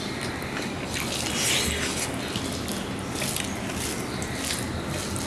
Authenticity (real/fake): real